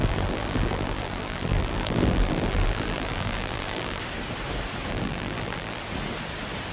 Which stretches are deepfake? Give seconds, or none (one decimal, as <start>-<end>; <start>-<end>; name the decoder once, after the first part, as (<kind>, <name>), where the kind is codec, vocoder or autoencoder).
0.0-4.0 (vocoder, BigVGAN v2); 4.9-5.8